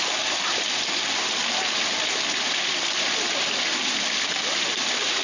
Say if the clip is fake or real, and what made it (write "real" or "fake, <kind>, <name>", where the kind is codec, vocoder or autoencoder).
real